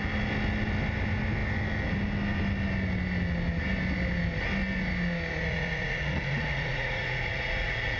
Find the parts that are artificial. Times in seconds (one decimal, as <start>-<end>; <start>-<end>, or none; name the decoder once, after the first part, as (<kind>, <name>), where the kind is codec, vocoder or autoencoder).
5.3-8.0 (vocoder, Vocos)